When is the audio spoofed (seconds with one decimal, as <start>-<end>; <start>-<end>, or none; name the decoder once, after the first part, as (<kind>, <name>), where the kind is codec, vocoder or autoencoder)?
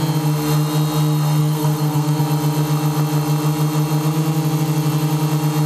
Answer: 1.4-2.2 (codec, SNAC)